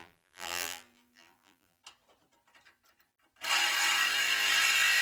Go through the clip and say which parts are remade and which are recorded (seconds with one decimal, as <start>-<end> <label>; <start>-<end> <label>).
0.0-1.8 remade; 1.8-5.0 recorded